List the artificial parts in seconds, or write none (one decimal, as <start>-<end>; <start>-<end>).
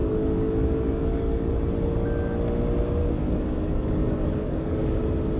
0.0-1.5; 3.0-4.8